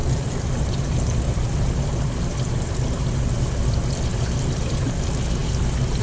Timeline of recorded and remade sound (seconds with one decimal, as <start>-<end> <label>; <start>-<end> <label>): 0.0-3.6 remade; 3.6-4.1 recorded; 4.1-4.8 remade; 4.8-6.0 recorded